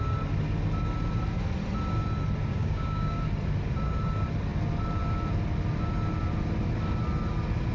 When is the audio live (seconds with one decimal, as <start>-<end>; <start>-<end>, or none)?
0.0-2.5; 3.2-7.7